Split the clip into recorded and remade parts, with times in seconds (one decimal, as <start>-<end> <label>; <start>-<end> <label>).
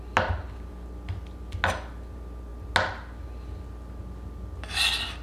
0.0-5.2 recorded